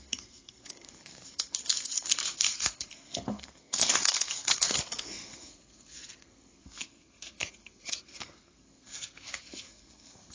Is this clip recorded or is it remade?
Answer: remade